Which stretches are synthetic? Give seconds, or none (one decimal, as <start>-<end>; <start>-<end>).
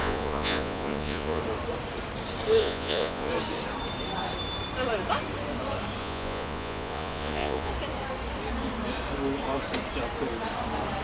0.0-1.4; 2.6-3.3; 6.0-7.7